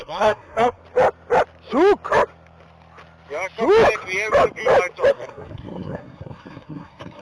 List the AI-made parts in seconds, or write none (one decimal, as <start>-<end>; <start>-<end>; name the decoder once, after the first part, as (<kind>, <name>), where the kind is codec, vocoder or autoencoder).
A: 0.0-0.8 (codec, SNAC); 5.1-7.2